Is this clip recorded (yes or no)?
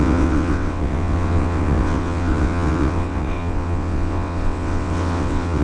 no